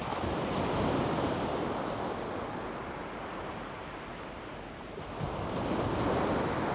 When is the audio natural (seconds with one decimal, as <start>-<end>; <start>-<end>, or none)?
0.0-6.7